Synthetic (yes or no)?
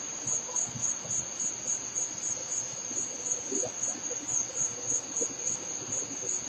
no